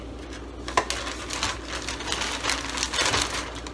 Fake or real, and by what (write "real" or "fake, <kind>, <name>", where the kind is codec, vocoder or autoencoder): real